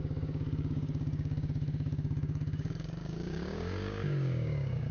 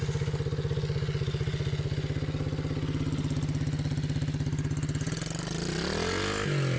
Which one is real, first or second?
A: second